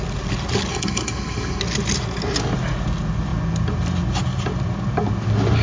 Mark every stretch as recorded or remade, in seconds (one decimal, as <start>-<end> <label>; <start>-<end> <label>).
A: 0.0-0.7 recorded; 0.7-1.6 remade; 1.6-5.6 recorded